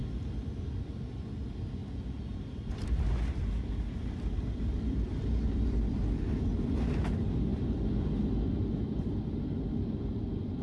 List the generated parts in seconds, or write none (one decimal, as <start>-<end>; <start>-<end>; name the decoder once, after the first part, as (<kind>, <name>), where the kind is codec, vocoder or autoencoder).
7.5-8.7 (vocoder, BigVGAN v2)